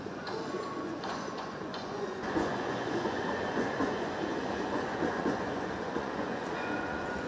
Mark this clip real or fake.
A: fake